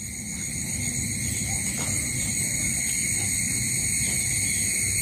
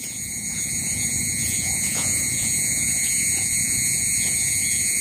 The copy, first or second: second